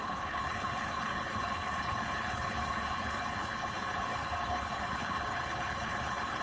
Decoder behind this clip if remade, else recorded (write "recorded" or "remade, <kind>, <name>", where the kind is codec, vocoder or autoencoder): remade, codec, HILCodec